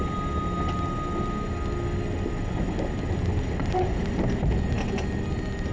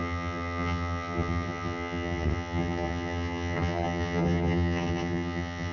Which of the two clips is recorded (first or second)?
first